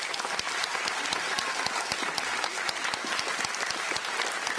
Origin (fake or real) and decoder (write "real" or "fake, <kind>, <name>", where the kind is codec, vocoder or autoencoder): real